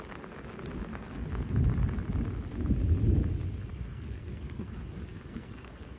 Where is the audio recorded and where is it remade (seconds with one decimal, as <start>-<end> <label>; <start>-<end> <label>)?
0.0-0.9 recorded; 0.9-1.5 remade; 1.5-3.7 recorded; 3.7-6.0 remade